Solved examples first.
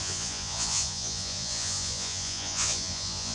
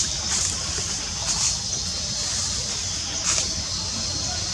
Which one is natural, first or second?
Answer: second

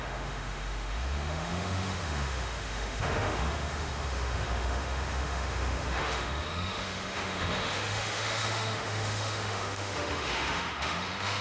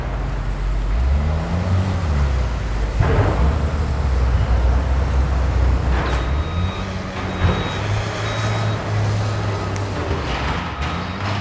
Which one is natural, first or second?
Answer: second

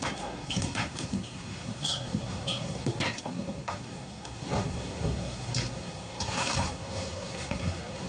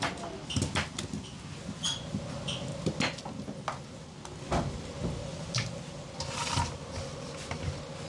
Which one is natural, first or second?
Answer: second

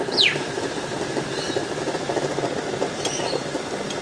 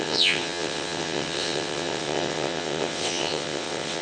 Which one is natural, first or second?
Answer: first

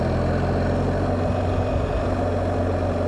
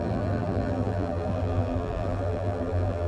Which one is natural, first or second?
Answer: first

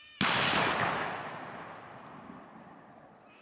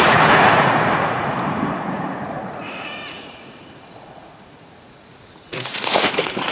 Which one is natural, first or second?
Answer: first